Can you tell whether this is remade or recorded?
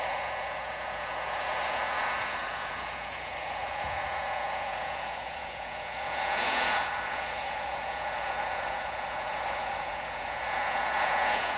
remade